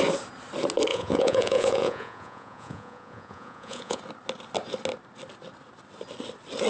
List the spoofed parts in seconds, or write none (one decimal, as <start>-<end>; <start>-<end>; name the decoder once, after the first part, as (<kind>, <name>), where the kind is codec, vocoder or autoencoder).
0.9-4.0 (vocoder, Vocos)